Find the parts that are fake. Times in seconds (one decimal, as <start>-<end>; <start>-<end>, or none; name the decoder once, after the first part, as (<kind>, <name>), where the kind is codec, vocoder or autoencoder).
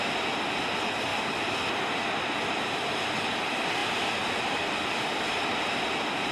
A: none